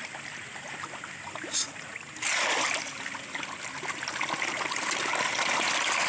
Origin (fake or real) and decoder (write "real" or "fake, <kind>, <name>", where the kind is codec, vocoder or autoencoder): real